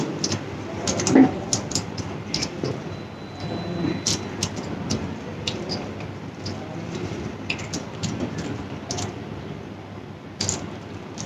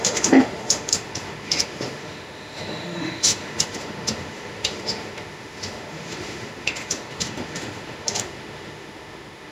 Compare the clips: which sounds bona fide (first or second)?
first